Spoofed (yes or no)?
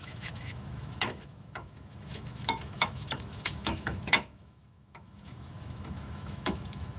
yes